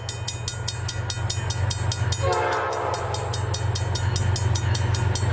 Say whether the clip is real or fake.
real